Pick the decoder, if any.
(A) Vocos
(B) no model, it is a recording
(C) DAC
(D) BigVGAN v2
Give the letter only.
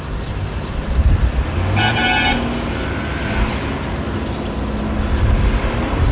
B